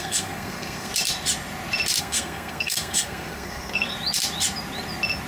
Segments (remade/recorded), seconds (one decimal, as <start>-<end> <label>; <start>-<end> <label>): 0.0-0.9 remade; 0.9-2.0 recorded; 2.0-3.9 remade; 3.9-5.3 recorded